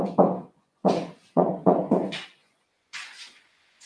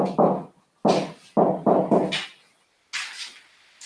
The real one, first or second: second